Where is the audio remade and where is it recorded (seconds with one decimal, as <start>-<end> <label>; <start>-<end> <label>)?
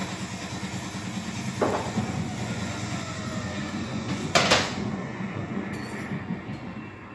0.0-1.7 recorded; 1.7-7.1 remade